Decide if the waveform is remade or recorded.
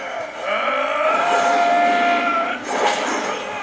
recorded